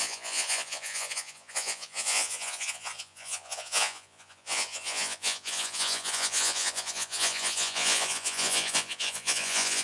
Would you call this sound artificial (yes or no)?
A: yes